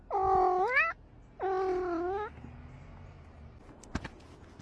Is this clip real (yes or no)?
yes